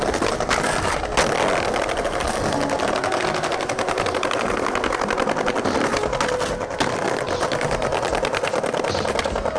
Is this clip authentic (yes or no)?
yes